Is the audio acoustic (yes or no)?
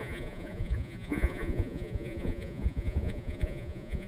no